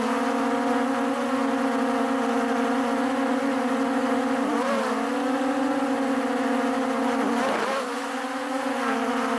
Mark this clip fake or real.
real